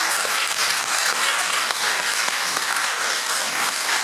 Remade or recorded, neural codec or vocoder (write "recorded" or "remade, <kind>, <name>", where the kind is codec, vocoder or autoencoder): remade, codec, DAC